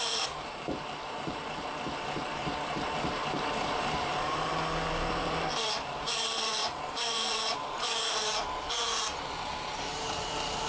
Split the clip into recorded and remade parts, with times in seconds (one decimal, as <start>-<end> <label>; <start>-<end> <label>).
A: 0.0-2.4 remade; 2.4-2.9 recorded; 2.9-4.5 remade; 4.5-5.1 recorded; 5.1-10.7 remade

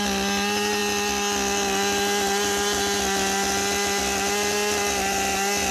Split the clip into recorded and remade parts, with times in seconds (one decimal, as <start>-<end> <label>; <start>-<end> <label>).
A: 0.0-5.7 recorded

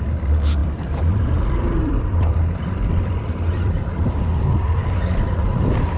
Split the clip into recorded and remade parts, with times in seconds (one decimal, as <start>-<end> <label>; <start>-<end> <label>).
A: 0.0-0.6 recorded; 0.6-4.2 remade; 4.2-4.8 recorded; 4.8-5.4 remade; 5.4-6.0 recorded

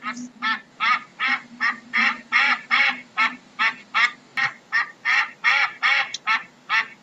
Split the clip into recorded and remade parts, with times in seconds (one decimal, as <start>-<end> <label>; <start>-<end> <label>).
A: 0.0-1.1 recorded; 1.1-3.6 remade; 3.6-4.3 recorded; 4.3-6.2 remade; 6.2-7.0 recorded

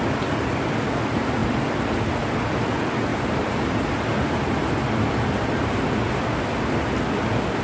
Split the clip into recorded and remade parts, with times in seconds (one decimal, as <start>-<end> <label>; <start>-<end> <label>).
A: 0.0-3.1 recorded; 3.1-4.6 remade; 4.6-7.6 recorded

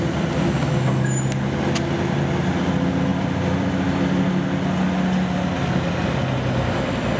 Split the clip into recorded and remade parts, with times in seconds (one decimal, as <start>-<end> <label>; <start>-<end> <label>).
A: 0.0-3.1 recorded; 3.1-3.7 remade; 3.7-7.2 recorded

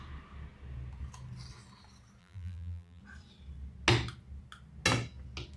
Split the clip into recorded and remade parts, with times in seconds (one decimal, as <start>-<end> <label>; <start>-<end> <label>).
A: 0.0-2.2 recorded; 2.2-3.0 remade; 3.0-5.6 recorded

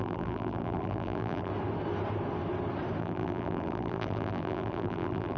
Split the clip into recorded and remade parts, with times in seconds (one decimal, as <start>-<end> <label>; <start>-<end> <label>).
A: 0.0-1.5 remade; 1.5-3.0 recorded; 3.0-5.4 remade